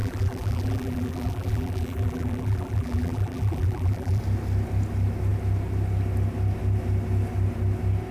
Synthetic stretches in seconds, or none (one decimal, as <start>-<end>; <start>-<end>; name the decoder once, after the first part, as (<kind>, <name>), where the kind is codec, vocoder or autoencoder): 0.0-4.2 (vocoder, BigVGAN v2)